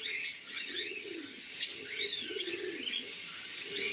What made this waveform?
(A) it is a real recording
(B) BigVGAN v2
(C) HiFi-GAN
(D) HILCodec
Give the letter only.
C